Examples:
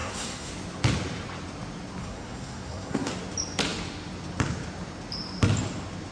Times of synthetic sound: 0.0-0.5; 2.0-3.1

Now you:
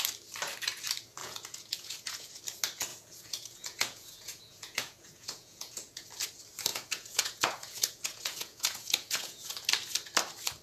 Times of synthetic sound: 1.2-2.3; 2.9-6.1; 6.7-9.5

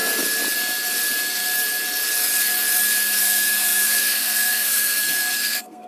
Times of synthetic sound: 3.2-5.9